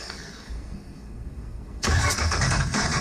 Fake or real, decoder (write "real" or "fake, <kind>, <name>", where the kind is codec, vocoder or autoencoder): fake, codec, SNAC